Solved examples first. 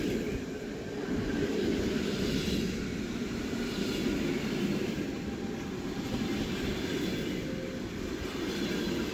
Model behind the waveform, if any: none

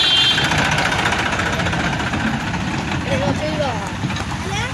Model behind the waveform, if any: none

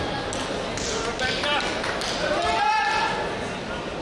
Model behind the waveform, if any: none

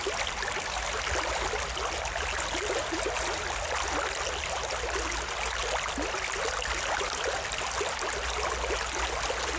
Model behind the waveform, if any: none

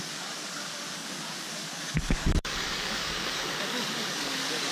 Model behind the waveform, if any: codec, DAC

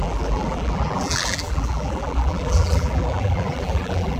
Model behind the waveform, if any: vocoder, BigVGAN v2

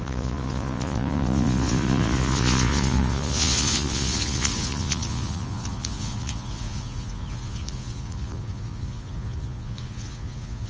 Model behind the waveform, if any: vocoder, Vocos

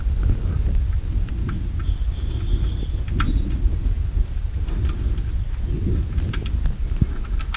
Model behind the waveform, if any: none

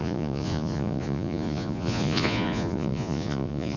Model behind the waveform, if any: vocoder, Vocos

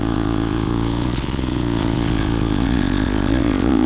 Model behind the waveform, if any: vocoder, Vocos